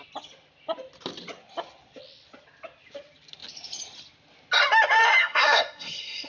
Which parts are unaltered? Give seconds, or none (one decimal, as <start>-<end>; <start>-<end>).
0.0-5.2